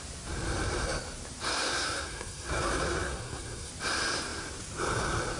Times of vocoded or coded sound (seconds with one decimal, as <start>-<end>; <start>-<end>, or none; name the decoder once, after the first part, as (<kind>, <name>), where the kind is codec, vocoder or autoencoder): 1.5-3.7 (codec, SNAC)